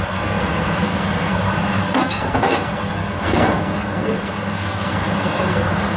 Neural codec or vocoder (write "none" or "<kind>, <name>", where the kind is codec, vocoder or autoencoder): codec, SNAC